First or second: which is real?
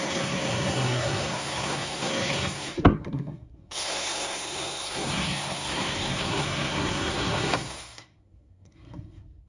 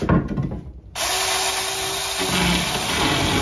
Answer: second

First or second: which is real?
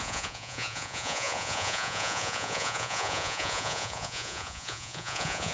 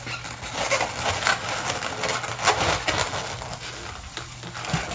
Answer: second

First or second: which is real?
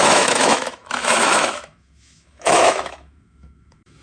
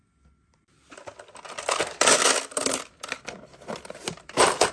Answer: second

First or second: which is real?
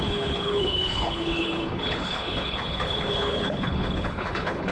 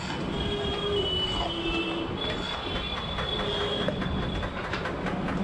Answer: second